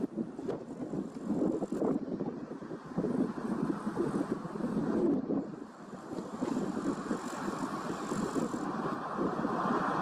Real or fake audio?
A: real